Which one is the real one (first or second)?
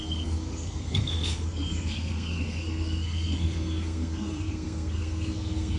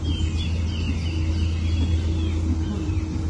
second